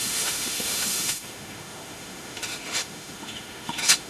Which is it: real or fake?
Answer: fake